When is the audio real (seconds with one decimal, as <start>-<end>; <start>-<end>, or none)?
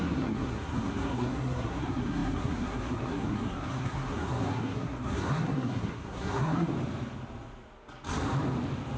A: 6.7-9.0